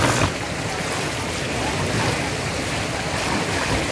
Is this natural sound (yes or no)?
yes